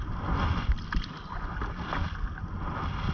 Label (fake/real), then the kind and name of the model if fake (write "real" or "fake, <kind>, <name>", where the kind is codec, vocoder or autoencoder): real